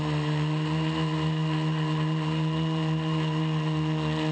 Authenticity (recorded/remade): recorded